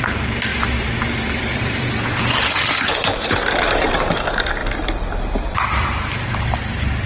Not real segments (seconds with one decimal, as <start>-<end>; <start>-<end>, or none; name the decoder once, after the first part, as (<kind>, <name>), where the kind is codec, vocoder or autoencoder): 0.0-0.5 (vocoder, BigVGAN v2); 1.6-4.6; 5.2-7.1